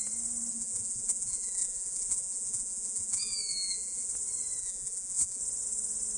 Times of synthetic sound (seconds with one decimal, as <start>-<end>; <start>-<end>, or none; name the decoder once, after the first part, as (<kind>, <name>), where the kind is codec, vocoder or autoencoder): 0.5-4.1 (vocoder, Vocos); 4.6-5.4